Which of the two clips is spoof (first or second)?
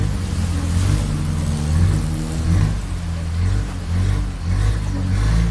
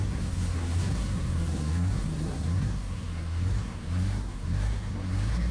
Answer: second